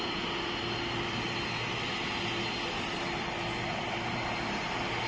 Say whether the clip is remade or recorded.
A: recorded